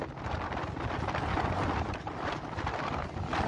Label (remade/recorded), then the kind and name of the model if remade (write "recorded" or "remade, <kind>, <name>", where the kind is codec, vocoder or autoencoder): recorded